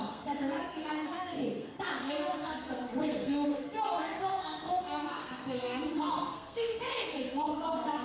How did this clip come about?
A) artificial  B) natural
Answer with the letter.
A